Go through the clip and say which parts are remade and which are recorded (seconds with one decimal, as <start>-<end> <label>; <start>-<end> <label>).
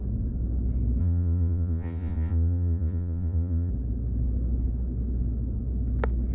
0.0-1.0 recorded; 1.0-3.7 remade; 3.7-6.3 recorded